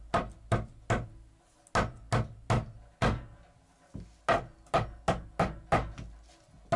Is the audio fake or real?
real